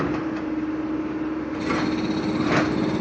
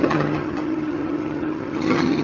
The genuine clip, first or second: first